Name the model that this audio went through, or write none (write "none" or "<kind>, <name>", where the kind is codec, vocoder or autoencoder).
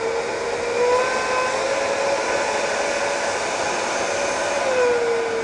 none